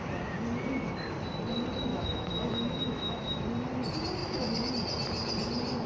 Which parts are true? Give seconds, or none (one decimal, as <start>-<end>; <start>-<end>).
0.0-1.9; 3.4-4.2; 4.7-5.9